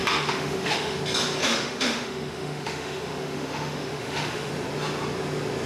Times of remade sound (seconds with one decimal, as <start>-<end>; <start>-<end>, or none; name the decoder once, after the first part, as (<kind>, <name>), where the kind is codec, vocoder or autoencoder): 0.0-1.0 (autoencoder, DAC-VAE); 1.4-4.5